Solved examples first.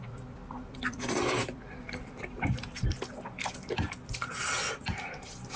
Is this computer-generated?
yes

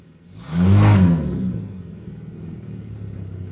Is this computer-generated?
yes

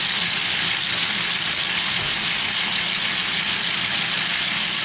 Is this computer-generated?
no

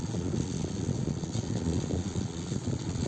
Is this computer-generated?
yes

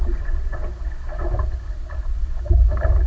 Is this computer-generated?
no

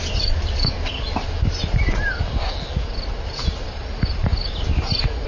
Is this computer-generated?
no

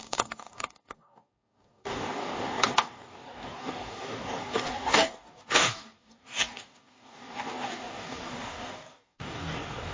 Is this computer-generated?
yes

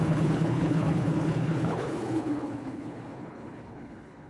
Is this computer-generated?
yes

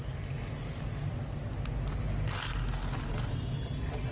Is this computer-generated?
no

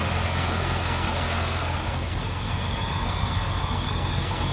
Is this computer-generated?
yes